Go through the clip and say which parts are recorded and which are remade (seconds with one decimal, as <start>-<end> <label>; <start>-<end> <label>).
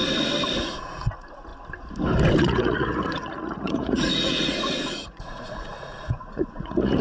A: 0.0-0.6 recorded; 0.6-1.5 remade; 1.5-2.4 recorded; 2.4-7.0 remade